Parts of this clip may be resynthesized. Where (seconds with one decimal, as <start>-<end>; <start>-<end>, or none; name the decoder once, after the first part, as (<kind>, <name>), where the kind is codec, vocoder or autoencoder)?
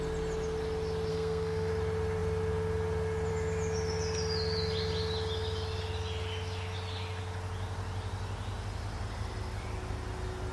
1.1-1.7 (codec, SNAC)